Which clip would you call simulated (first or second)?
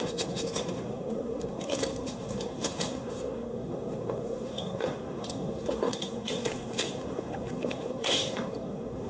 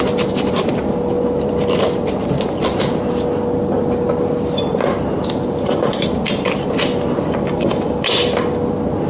first